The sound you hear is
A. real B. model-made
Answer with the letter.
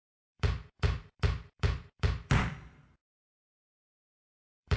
B